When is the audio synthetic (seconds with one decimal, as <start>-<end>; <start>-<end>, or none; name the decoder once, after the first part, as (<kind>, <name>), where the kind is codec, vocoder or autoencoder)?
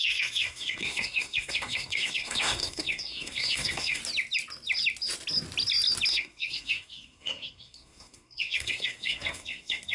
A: 0.0-4.0 (codec, SNAC); 6.1-9.9